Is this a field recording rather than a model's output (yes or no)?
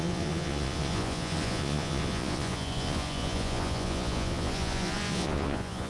no